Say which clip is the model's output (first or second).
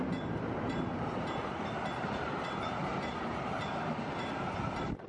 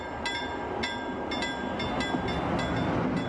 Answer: first